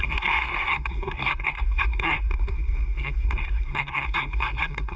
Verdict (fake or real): fake